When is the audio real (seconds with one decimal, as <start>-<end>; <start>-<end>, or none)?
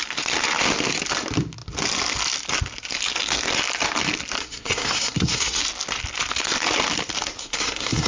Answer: 0.0-4.4; 5.6-7.4